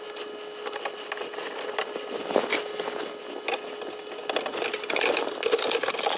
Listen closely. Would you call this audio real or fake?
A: real